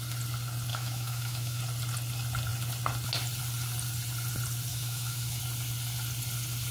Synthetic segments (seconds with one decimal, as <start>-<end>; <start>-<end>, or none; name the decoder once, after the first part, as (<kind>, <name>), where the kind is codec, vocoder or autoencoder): 0.7-1.6 (autoencoder, DAC-VAE); 4.7-5.4